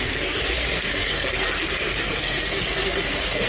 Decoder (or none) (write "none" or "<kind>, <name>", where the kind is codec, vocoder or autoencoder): codec, SNAC